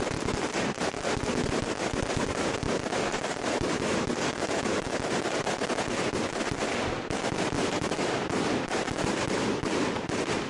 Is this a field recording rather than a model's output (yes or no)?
yes